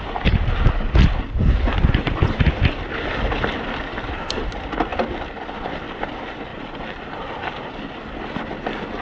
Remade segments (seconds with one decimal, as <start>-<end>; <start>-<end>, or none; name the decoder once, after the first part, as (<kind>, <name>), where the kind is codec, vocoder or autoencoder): 1.4-2.2 (vocoder, BigVGAN v2); 6.5-7.7